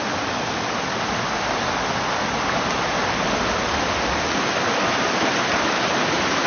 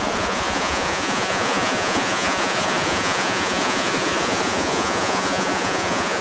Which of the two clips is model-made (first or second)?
second